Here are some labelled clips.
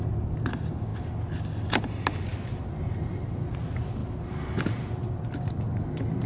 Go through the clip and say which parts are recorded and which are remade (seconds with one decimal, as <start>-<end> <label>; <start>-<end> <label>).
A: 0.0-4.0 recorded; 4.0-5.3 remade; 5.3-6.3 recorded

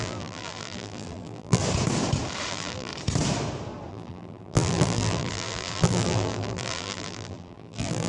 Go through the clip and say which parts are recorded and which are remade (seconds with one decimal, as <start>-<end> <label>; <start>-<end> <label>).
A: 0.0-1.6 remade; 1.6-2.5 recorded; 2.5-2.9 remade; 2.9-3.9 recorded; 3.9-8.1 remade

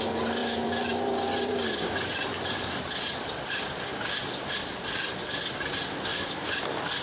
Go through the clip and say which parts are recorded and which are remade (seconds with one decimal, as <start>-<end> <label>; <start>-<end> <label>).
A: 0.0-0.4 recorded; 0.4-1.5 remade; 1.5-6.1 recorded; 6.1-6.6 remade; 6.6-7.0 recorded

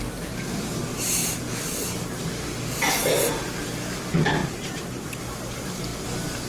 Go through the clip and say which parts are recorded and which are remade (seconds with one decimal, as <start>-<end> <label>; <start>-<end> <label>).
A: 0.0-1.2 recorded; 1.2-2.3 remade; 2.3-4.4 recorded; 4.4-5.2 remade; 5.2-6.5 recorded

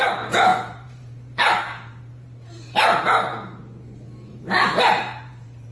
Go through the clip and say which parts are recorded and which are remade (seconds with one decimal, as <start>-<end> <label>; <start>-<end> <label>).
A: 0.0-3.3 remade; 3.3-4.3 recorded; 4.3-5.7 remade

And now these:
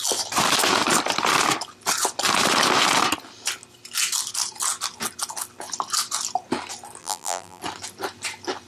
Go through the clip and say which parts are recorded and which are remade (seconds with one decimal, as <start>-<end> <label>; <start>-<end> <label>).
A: 0.0-7.0 recorded; 7.0-7.6 remade; 7.6-8.7 recorded

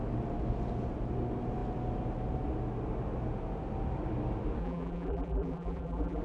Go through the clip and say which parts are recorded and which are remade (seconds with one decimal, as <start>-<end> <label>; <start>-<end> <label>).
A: 0.0-4.6 recorded; 4.6-6.2 remade